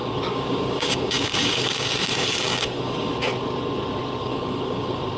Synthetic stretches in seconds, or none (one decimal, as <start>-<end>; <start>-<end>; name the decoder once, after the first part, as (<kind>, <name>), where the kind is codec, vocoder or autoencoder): 0.0-3.1 (codec, DAC); 4.2-5.2